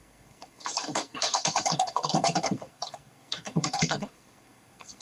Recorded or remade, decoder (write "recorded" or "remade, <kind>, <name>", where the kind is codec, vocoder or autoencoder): remade, codec, SNAC